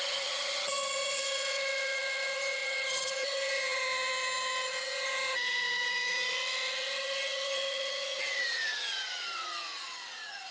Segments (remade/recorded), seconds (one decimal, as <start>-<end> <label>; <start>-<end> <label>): 0.0-10.5 remade